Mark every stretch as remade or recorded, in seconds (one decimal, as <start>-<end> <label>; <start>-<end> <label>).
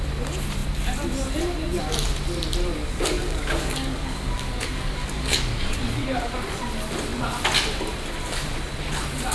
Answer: 0.0-2.8 recorded; 2.8-6.3 remade; 6.3-9.3 recorded